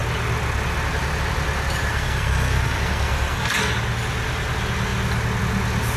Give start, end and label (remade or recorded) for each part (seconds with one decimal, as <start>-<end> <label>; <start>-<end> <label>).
0.0-1.9 recorded; 1.9-3.7 remade; 3.7-6.0 recorded